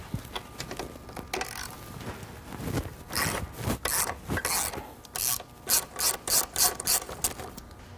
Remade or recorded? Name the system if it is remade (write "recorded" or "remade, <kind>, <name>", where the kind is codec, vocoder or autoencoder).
recorded